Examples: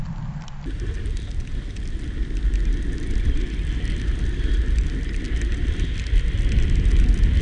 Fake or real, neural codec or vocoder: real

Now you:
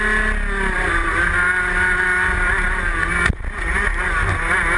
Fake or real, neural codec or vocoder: real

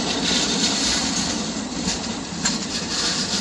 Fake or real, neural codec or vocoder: fake, vocoder, BigVGAN v2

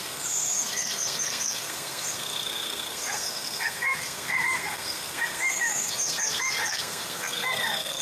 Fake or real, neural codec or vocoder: fake, codec, SNAC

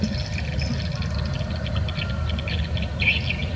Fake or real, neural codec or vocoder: real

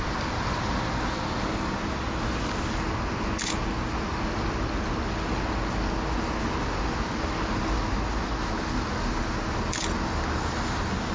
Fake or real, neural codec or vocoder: real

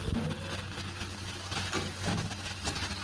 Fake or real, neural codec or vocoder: real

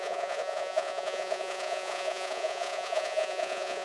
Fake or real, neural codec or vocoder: fake, vocoder, Vocos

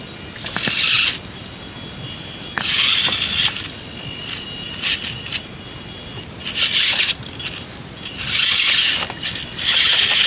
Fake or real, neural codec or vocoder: real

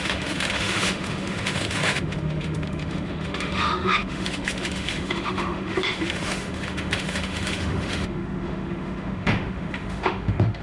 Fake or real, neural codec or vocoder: fake, autoencoder, DAC-VAE